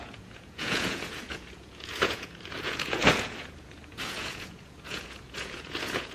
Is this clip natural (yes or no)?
no